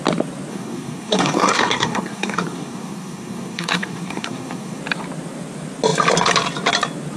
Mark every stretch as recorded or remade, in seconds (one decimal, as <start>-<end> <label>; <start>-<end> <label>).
0.0-0.5 recorded; 0.5-4.8 remade; 4.8-7.2 recorded